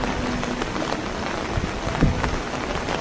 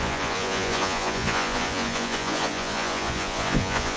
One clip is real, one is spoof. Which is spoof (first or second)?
second